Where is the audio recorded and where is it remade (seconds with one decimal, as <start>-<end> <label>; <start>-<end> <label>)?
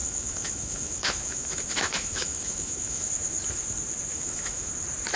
0.0-3.1 remade; 3.1-4.1 recorded; 4.1-4.7 remade; 4.7-5.2 recorded